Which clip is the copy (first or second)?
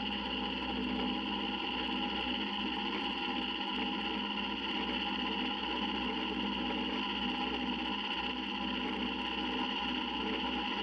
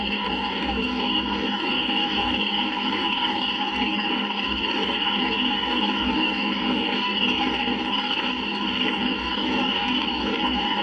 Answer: second